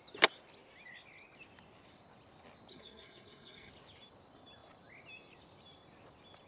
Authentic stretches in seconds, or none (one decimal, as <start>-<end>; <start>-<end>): 0.0-2.7; 3.7-6.5

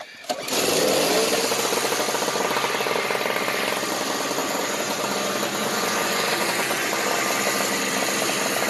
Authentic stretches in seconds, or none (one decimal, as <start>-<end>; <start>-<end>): 0.0-4.4; 5.0-5.6; 6.9-8.7